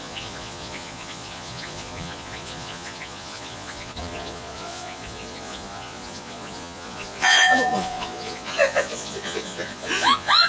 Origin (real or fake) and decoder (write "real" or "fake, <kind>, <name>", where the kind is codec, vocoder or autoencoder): fake, vocoder, Vocos